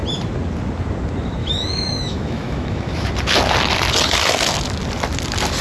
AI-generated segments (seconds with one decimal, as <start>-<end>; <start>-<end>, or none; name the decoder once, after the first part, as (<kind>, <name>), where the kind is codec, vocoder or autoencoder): 1.4-3.1 (autoencoder, DAC-VAE)